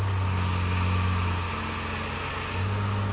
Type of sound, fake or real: real